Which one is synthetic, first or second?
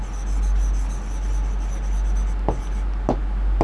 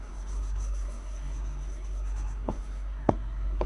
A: second